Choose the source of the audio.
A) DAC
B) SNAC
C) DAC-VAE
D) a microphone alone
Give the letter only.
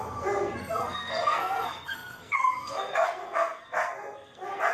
B